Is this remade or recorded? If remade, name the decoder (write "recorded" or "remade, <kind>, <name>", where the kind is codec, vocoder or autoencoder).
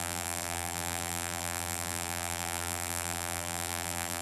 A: remade, vocoder, BigVGAN v2